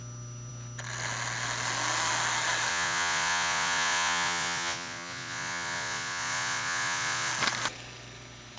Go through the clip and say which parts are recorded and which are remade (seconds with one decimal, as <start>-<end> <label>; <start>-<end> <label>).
0.0-2.7 recorded; 2.7-7.3 remade; 7.3-8.6 recorded